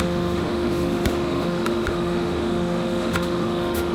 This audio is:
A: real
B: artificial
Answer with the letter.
B